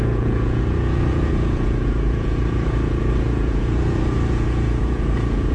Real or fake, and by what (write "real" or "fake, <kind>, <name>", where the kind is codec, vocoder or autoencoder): fake, vocoder, Vocos